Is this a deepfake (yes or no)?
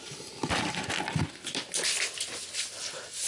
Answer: no